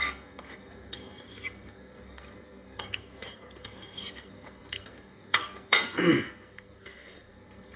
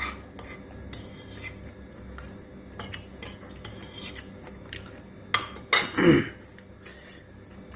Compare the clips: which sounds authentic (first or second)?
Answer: second